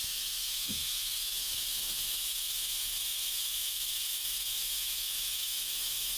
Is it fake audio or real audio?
fake